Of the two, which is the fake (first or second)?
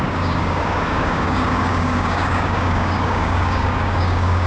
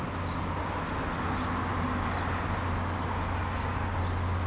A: first